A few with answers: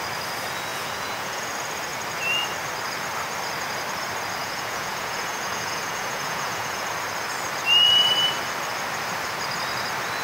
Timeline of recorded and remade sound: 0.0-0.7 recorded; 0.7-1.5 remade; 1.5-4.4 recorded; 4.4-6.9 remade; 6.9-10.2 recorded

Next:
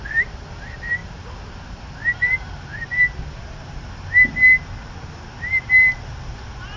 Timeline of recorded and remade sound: 0.0-6.8 recorded

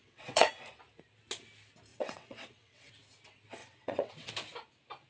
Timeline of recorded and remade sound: 0.0-0.5 remade; 0.5-1.9 recorded; 1.9-2.9 remade; 2.9-3.6 recorded; 3.6-4.3 remade; 4.3-5.1 recorded

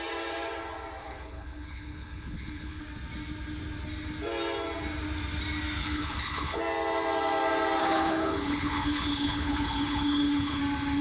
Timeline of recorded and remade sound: 0.0-1.0 recorded; 1.0-2.8 remade; 2.8-5.8 recorded; 5.8-6.6 remade; 6.6-7.8 recorded; 7.8-10.6 remade; 10.6-11.0 recorded

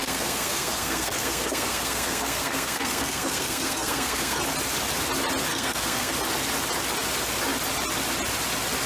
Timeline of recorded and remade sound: 0.0-4.4 remade; 4.4-5.5 recorded; 5.5-6.1 remade; 6.1-8.9 recorded

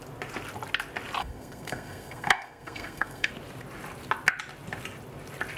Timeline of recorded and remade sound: 0.0-1.2 recorded; 1.2-3.3 remade; 3.3-5.6 recorded